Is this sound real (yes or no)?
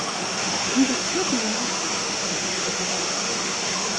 no